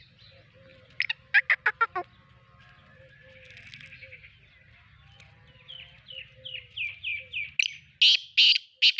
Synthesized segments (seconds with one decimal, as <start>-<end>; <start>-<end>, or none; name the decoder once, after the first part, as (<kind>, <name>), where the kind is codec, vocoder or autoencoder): none